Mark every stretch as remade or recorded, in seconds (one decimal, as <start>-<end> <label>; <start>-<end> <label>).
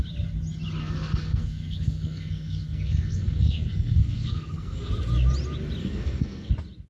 0.0-0.8 recorded; 0.8-4.9 remade; 4.9-5.8 recorded; 5.8-6.5 remade; 6.5-6.9 recorded